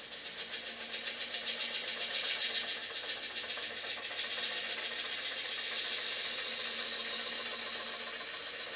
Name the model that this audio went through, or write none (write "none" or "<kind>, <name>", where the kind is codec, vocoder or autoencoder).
none